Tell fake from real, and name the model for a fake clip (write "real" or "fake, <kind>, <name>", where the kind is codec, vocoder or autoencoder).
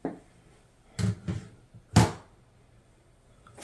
real